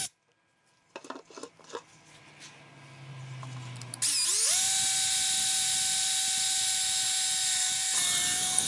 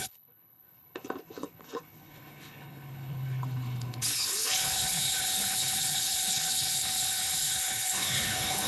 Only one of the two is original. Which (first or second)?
first